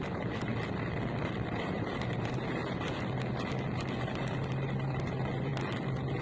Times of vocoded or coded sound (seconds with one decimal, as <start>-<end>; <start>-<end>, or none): 0.0-0.5; 1.5-2.6; 4.0-5.5